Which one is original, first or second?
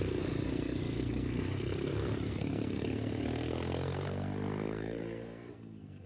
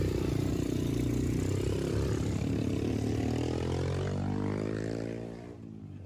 second